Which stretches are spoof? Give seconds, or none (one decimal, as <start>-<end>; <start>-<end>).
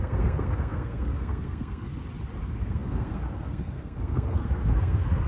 0.0-1.9; 2.4-5.3